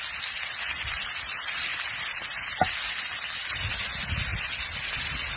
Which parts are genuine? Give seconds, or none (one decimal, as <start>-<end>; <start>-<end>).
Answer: 0.0-1.7; 3.7-4.3; 5.0-5.4